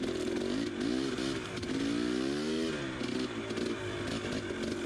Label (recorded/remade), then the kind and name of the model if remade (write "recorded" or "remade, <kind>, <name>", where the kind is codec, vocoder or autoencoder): recorded